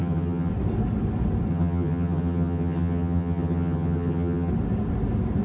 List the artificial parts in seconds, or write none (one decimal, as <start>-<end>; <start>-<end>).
0.0-0.5; 1.5-4.5